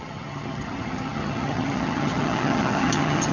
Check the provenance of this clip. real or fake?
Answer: fake